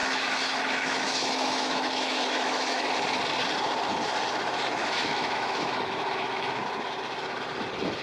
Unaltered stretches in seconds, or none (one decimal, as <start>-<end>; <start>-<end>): 2.9-4.8; 6.6-8.0

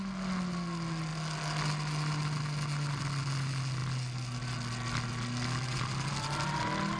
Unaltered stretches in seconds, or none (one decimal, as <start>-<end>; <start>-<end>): 0.0-7.0